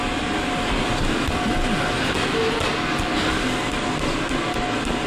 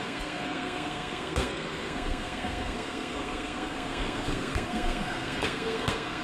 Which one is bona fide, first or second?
first